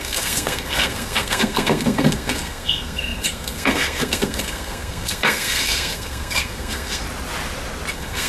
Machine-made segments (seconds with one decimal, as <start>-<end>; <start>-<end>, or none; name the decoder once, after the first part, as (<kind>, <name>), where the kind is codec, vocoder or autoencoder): 0.0-7.0 (codec, SNAC); 7.9-8.3